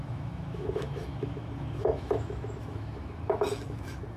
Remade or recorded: remade